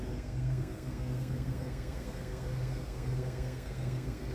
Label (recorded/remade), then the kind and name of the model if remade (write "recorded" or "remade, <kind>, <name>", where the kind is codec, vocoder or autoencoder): remade, codec, SNAC